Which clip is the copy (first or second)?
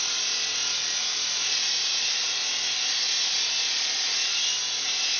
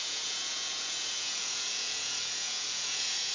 second